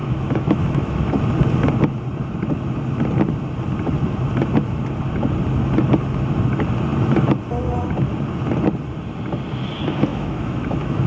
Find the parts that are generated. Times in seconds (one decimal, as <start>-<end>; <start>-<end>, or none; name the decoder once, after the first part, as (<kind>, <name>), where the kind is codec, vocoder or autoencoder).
0.0-1.1 (autoencoder, DAC-VAE); 10.1-11.1